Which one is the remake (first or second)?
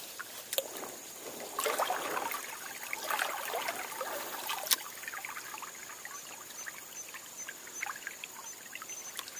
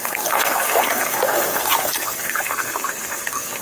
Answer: second